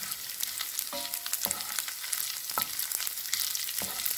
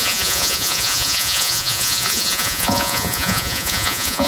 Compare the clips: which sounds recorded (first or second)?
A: first